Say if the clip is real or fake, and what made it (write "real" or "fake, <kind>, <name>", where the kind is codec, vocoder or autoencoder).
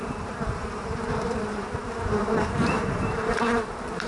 fake, vocoder, BigVGAN v2